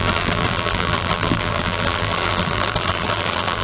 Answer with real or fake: fake